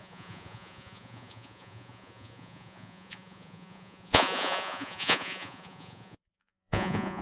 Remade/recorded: remade